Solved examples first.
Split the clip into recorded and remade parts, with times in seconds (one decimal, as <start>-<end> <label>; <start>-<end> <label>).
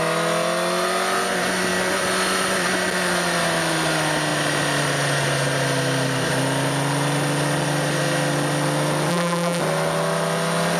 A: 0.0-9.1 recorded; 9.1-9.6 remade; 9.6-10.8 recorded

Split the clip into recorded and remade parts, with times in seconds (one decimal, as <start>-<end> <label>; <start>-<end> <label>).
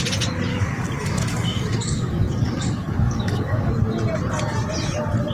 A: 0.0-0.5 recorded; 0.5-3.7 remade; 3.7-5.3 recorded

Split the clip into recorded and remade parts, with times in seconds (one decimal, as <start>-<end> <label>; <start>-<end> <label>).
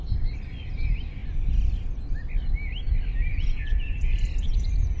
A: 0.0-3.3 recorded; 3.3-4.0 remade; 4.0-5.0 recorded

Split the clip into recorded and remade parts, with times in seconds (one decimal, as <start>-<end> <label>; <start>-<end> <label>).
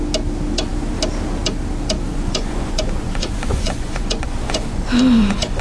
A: 0.0-2.1 recorded; 2.1-5.6 remade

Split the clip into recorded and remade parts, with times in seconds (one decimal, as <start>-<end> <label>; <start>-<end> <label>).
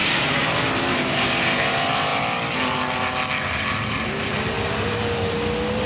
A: 0.0-2.1 remade; 2.1-5.9 recorded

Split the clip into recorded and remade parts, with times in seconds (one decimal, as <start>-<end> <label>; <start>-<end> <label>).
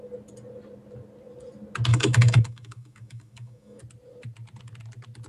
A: 0.0-1.9 recorded; 1.9-3.8 remade; 3.8-5.3 recorded